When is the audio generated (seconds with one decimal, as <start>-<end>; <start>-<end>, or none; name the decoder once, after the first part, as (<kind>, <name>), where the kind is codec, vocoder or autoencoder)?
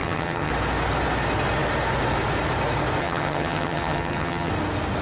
0.0-0.5 (vocoder, HiFi-GAN); 3.0-4.5